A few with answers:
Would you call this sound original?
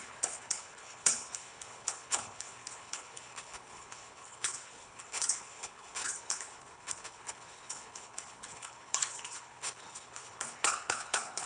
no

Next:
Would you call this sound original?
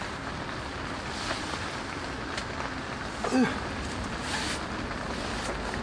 yes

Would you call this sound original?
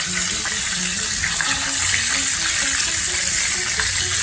yes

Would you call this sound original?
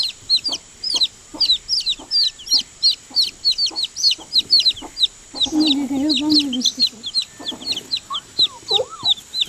yes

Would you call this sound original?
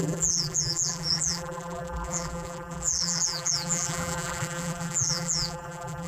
no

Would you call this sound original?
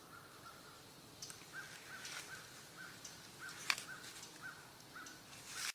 yes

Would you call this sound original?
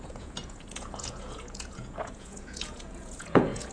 no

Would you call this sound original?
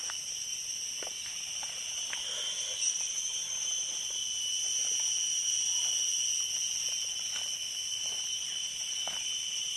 yes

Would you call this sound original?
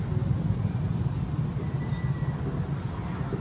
yes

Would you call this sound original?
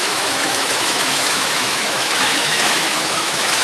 no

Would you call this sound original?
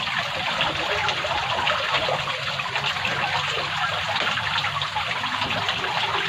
yes